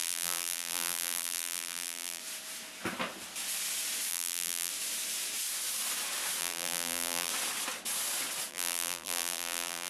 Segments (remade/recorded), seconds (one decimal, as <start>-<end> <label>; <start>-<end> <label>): 0.0-2.2 remade; 2.2-4.1 recorded; 4.1-4.7 remade; 4.7-6.4 recorded; 6.4-7.3 remade; 7.3-8.5 recorded; 8.5-9.9 remade